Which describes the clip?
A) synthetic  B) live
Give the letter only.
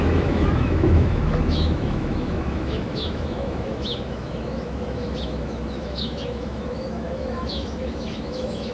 A